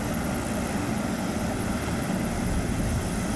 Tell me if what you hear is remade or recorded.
recorded